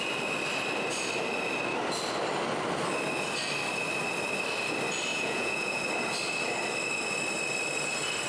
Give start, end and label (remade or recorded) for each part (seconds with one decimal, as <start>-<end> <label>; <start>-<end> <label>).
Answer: 0.0-5.1 recorded; 5.1-5.8 remade; 5.8-8.3 recorded